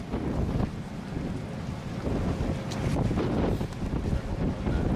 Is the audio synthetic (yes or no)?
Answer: no